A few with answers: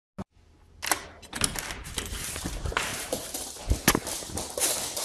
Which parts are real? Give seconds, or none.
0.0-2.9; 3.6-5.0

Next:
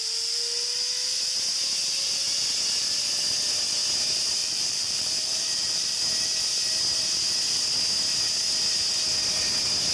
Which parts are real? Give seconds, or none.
0.0-4.4; 6.0-9.9

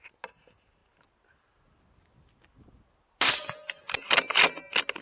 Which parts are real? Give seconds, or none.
0.0-5.0

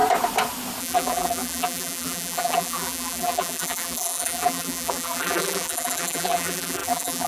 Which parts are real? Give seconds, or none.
0.0-0.8

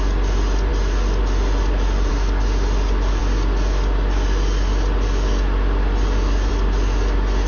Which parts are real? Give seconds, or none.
0.0-7.5

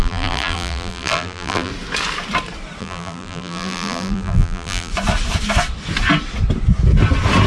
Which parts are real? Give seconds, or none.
1.7-2.8; 4.9-7.5

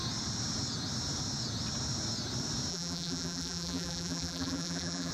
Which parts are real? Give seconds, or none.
0.0-2.7

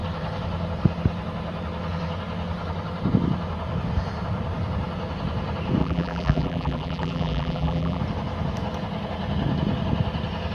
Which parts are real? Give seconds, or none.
0.0-5.8; 8.0-10.5